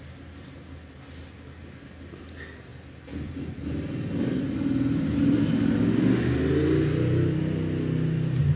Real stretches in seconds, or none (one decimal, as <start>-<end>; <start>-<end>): 0.0-8.6